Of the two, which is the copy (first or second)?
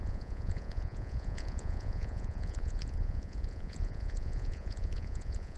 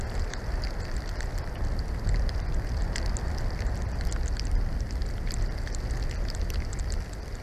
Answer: first